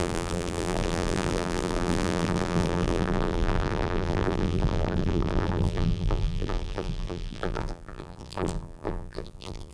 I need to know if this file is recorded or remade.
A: remade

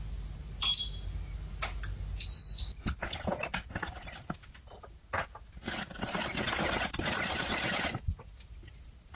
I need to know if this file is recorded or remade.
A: recorded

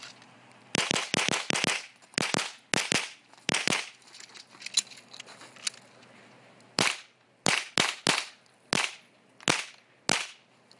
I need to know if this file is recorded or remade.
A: recorded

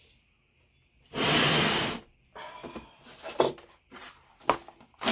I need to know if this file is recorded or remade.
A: recorded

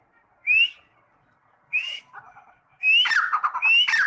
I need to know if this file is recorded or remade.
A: recorded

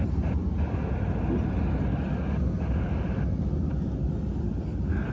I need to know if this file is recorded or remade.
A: recorded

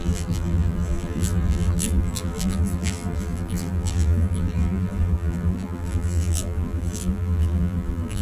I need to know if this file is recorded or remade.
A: remade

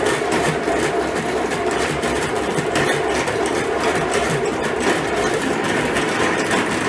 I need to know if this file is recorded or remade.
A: remade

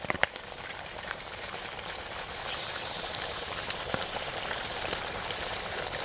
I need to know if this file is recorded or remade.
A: remade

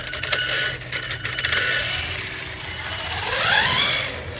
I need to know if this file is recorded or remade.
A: recorded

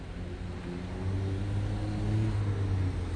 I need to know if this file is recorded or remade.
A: recorded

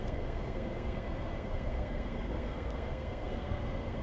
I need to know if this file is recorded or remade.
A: remade